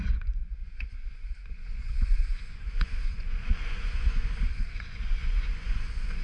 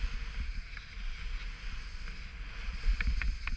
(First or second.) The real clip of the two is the second